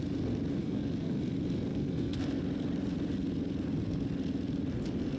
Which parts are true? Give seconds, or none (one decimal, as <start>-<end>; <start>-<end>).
0.0-0.6; 1.2-1.7; 2.4-5.2

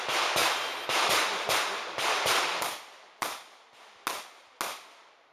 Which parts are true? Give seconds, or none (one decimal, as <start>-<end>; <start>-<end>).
0.0-0.4; 3.6-5.3

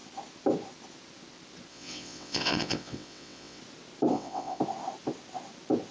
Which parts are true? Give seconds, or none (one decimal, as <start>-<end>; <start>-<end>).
0.0-1.7; 3.6-4.1; 4.6-5.9

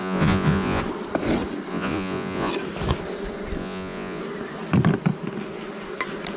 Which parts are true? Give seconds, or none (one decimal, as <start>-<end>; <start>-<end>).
0.8-1.7; 2.5-3.6; 4.2-6.4

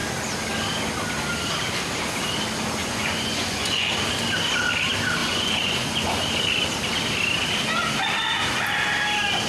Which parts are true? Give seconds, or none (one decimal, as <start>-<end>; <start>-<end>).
0.0-2.8; 3.9-5.2; 6.1-9.5

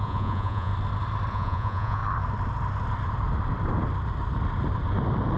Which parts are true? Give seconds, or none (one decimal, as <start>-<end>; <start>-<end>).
0.7-1.3; 2.0-5.4

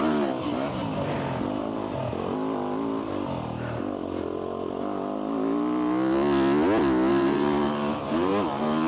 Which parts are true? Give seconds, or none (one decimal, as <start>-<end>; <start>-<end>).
0.8-1.6; 2.0-7.1; 8.3-8.9

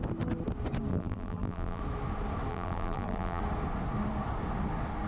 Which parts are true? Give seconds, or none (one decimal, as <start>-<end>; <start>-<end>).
0.0-0.9; 1.8-2.5; 3.4-5.1